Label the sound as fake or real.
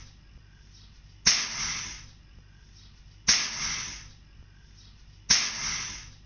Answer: real